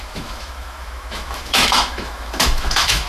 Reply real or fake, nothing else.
fake